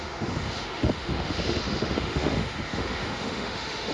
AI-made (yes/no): yes